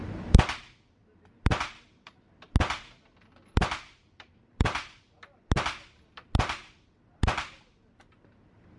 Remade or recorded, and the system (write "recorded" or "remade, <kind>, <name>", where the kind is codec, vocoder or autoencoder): recorded